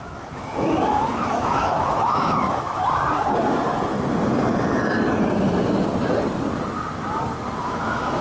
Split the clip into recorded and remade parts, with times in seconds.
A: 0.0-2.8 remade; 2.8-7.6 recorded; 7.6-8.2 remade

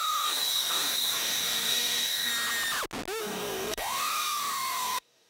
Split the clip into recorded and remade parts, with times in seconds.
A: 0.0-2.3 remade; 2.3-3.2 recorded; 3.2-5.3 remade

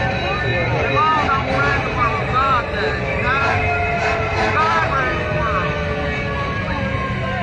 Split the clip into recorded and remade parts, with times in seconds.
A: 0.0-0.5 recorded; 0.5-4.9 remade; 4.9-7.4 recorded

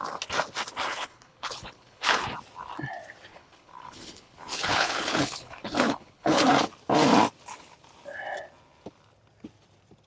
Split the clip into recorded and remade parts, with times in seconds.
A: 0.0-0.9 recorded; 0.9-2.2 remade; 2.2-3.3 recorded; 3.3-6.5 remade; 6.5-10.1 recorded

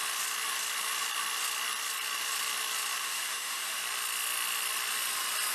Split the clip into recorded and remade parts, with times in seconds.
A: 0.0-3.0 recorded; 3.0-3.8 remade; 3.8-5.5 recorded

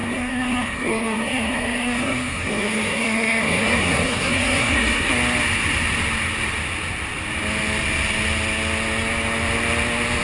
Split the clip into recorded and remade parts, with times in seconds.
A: 0.0-5.1 remade; 5.1-10.2 recorded